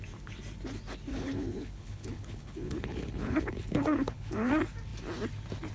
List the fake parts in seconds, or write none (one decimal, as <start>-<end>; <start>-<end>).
1.1-4.5